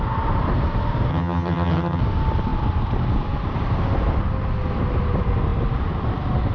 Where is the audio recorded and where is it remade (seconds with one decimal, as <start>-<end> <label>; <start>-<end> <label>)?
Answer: 0.0-1.1 recorded; 1.1-2.0 remade; 2.0-6.5 recorded